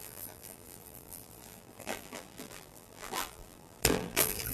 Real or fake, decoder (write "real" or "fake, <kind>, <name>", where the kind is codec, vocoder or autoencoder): fake, vocoder, BigVGAN v2